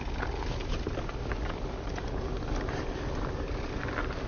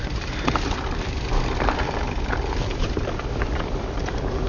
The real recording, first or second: first